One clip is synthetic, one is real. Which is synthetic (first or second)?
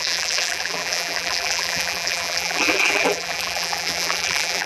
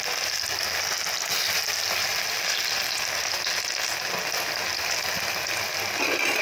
first